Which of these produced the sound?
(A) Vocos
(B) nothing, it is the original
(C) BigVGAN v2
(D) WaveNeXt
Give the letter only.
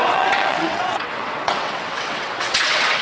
D